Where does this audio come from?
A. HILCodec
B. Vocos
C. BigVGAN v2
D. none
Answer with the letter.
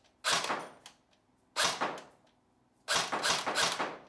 D